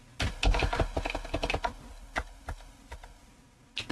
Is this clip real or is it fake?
real